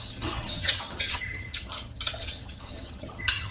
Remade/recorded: remade